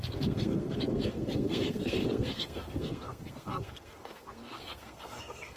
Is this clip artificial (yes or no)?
yes